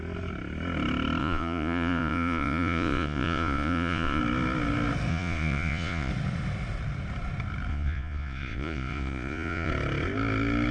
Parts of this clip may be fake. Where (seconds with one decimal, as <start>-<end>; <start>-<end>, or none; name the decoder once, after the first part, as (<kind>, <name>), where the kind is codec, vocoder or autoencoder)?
1.2-4.2 (vocoder, Vocos); 5.1-6.1; 7.7-9.7